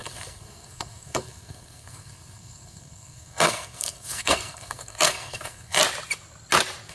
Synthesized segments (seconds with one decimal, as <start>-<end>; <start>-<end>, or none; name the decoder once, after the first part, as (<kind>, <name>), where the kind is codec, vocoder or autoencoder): 0.0-5.8 (codec, SNAC)